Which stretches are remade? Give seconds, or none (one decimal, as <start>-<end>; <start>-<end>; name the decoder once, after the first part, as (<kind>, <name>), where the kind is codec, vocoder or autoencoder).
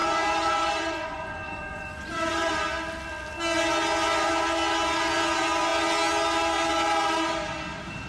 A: 0.0-2.5 (vocoder, Vocos)